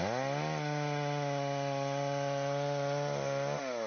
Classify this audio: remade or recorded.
recorded